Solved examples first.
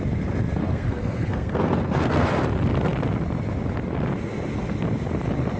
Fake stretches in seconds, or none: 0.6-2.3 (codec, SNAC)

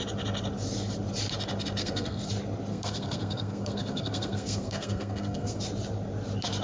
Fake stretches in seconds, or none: 1.8-2.3 (codec, SNAC); 2.7-5.6